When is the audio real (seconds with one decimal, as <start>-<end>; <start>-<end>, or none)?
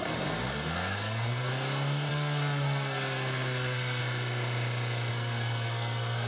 1.5-2.1; 4.0-5.1